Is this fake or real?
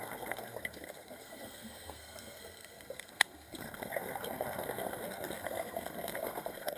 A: fake